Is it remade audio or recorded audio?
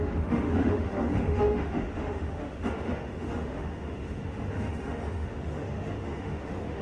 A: remade